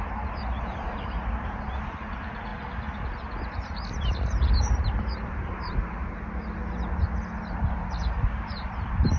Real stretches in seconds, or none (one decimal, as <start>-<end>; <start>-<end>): 2.5-3.5; 6.0-7.9